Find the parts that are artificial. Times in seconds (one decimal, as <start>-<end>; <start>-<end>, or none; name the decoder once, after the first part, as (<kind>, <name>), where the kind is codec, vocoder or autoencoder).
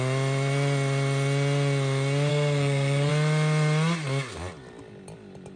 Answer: 2.3-3.1 (codec, SNAC)